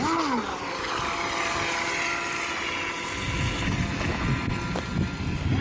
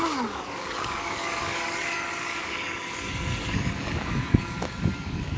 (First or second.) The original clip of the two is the first